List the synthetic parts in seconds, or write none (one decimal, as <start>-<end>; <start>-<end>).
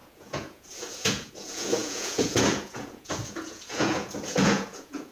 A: 0.0-5.1